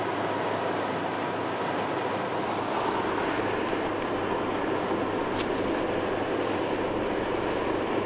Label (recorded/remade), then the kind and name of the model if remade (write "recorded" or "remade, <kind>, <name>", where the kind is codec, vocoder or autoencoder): recorded